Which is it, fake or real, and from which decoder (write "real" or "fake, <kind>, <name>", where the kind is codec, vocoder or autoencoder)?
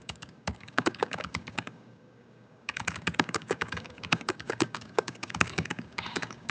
fake, codec, DAC